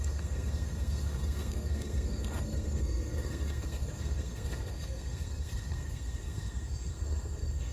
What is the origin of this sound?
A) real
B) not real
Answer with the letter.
B